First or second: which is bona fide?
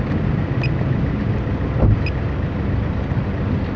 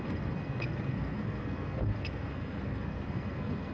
first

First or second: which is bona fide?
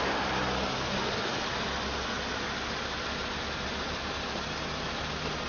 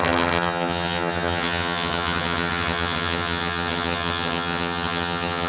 first